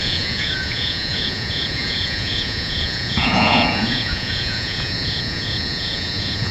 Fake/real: fake